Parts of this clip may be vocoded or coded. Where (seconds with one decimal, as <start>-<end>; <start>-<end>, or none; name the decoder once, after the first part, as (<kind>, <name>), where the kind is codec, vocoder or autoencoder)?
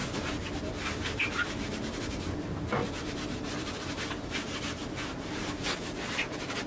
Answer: 0.0-6.7 (vocoder, BigVGAN v2)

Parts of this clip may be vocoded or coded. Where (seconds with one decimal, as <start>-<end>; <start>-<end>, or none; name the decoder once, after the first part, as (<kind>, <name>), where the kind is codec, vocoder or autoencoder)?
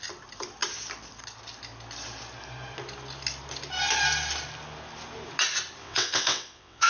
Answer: 5.8-6.9 (vocoder, WaveNeXt)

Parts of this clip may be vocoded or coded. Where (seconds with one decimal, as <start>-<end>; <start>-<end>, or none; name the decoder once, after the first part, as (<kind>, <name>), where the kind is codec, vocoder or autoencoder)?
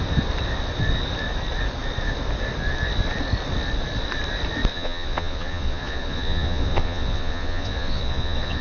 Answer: 4.7-8.6 (vocoder, Vocos)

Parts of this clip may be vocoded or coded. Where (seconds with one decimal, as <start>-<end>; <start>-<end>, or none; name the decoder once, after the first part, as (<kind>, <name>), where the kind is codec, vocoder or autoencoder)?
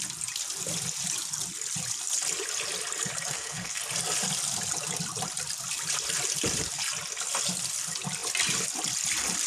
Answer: 3.3-3.8 (codec, SNAC)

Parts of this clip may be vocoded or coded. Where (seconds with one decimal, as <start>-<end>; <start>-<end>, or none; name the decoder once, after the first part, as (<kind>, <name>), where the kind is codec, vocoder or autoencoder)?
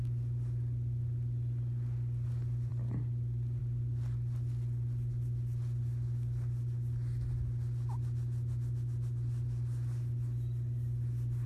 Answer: none